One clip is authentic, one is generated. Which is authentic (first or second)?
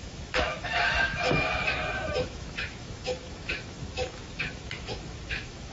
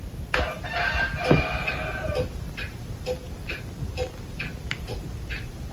second